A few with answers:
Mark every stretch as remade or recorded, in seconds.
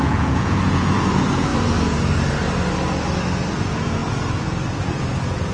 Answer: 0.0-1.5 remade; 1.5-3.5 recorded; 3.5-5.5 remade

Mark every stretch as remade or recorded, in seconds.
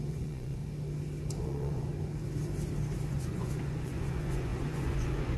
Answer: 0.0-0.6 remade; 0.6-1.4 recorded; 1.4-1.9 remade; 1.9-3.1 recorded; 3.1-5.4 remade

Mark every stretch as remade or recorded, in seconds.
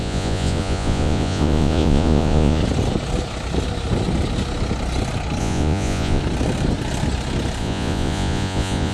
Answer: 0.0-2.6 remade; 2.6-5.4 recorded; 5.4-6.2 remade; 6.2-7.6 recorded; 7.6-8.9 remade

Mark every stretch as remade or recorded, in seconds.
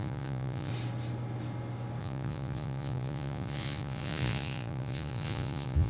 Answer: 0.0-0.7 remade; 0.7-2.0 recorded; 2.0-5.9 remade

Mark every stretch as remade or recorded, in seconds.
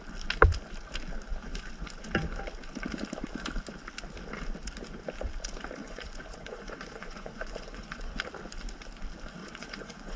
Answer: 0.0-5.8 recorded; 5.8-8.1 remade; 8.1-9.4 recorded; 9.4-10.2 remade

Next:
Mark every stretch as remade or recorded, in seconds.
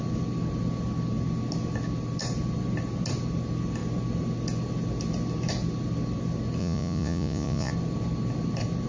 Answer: 0.0-6.6 recorded; 6.6-7.7 remade; 7.7-8.9 recorded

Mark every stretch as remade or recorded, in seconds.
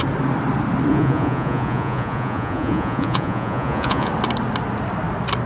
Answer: 0.0-0.9 recorded; 0.9-4.1 remade; 4.1-5.5 recorded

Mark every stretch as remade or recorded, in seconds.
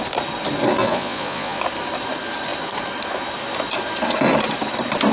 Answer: 0.0-0.8 recorded; 0.8-1.6 remade; 1.6-5.1 recorded